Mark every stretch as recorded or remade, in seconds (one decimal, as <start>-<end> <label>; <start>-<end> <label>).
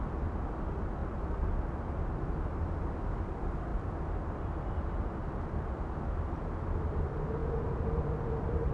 0.0-8.7 recorded